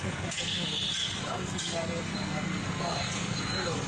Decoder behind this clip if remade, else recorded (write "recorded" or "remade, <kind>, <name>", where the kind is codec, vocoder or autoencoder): remade, codec, SNAC